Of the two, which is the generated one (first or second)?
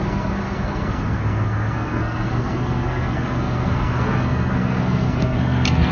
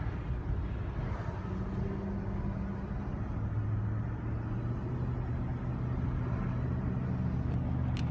first